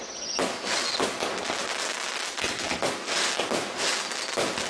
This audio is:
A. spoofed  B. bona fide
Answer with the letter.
B